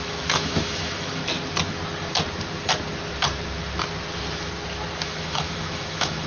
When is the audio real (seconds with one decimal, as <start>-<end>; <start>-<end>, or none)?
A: 1.2-5.0